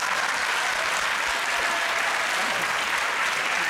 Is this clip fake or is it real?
real